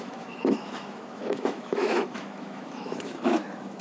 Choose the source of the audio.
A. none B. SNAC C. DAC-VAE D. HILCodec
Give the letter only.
C